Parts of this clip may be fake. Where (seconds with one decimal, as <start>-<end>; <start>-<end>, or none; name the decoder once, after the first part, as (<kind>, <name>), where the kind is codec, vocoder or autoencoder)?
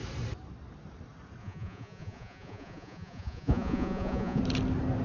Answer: 1.4-4.4 (vocoder, Vocos)